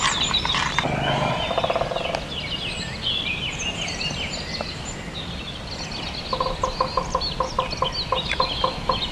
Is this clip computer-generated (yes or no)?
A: no